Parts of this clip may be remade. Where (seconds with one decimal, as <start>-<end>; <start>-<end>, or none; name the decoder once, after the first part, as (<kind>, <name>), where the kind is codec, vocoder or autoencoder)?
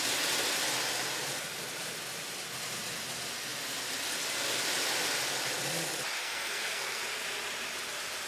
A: 6.2-7.0 (codec, SNAC)